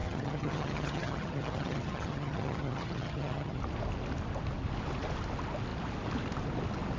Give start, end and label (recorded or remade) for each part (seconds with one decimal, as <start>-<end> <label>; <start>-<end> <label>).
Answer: 0.0-3.6 remade; 3.6-7.0 recorded